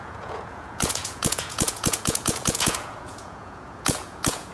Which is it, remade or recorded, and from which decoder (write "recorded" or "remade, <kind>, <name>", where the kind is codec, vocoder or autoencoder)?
remade, vocoder, Vocos